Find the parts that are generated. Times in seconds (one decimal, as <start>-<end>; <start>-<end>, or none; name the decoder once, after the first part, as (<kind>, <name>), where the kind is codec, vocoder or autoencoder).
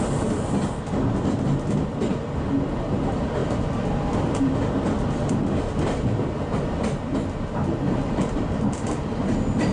none